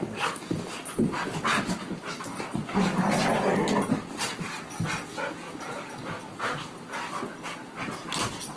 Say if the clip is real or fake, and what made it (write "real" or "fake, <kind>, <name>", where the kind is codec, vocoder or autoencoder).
real